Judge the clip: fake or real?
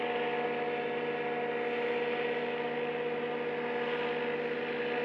real